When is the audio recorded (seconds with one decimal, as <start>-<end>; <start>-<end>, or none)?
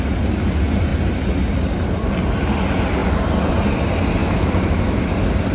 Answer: 0.0-4.2; 5.0-5.5